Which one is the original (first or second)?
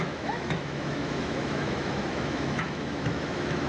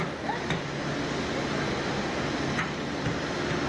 second